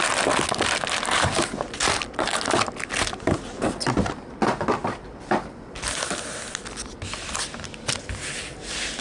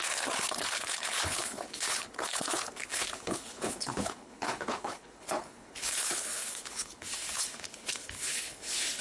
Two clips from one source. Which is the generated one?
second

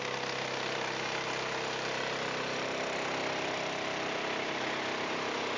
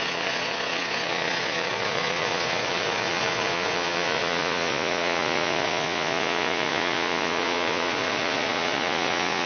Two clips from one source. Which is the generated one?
second